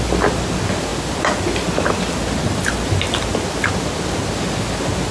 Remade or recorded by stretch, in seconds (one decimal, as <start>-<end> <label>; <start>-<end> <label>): 0.0-5.1 recorded